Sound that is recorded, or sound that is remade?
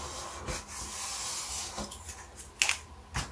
recorded